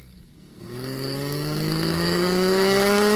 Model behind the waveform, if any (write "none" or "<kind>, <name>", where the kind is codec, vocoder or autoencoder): codec, SNAC